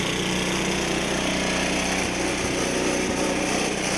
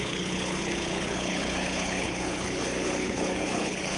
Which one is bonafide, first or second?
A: first